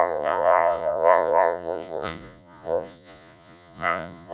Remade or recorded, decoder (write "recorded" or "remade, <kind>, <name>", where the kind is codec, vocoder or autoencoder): remade, vocoder, Vocos